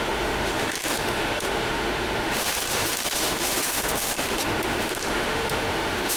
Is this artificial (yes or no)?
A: yes